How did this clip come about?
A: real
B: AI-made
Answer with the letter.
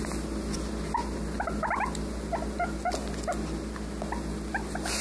A